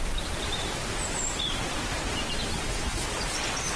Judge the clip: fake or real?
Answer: real